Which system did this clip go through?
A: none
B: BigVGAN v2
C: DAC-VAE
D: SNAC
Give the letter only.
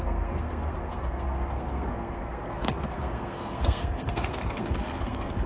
D